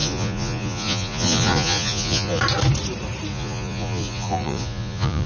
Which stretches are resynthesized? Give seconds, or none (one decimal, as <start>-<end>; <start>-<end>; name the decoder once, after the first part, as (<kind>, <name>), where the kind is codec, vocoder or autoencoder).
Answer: 0.0-2.4 (vocoder, Vocos); 3.3-5.3